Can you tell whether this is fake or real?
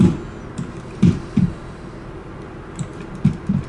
fake